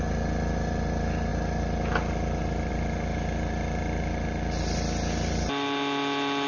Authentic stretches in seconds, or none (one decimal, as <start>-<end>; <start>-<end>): 0.0-6.5